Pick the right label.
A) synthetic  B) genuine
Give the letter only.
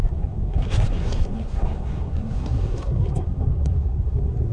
A